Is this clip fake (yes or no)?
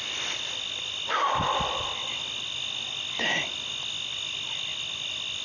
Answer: no